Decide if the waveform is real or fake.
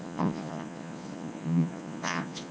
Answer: fake